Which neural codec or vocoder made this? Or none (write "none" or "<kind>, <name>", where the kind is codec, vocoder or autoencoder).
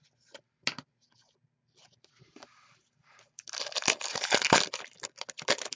none